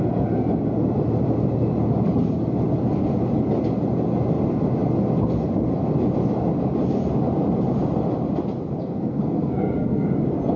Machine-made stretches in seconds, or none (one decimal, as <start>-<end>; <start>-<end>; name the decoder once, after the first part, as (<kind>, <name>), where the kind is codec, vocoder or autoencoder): 8.8-10.1 (codec, SNAC)